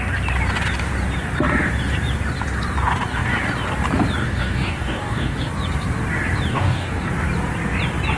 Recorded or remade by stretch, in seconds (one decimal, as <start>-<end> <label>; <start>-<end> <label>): 0.0-4.2 recorded; 4.2-5.5 remade; 5.5-6.5 recorded; 6.5-7.1 remade; 7.1-8.2 recorded